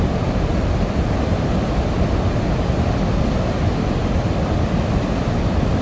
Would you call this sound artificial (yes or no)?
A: no